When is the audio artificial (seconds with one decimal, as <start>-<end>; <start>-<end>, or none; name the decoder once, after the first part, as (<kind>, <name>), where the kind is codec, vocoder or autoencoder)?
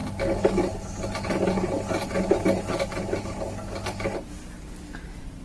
none